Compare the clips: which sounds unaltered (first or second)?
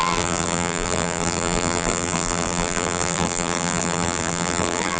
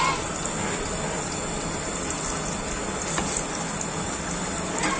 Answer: second